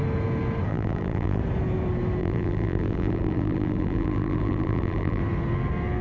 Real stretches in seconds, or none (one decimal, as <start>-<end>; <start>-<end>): 0.0-0.7; 1.4-2.2; 5.2-6.0